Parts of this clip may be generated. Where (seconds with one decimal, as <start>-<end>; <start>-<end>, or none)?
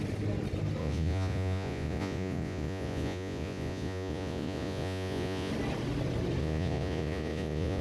0.8-5.5; 6.4-7.8